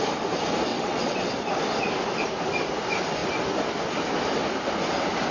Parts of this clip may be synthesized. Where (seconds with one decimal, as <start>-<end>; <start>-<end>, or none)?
0.7-1.3